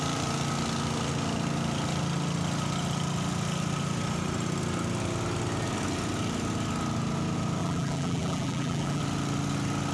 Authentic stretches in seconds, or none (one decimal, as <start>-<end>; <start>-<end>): 0.0-7.6; 9.0-9.9